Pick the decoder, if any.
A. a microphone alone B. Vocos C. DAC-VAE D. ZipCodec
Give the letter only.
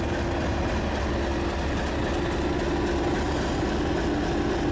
A